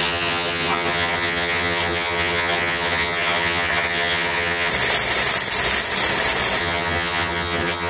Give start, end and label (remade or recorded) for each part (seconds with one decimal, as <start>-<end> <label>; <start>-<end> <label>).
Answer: 0.0-4.7 remade; 4.7-6.6 recorded; 6.6-7.9 remade